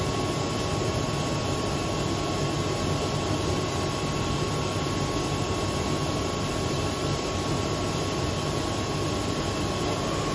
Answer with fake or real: real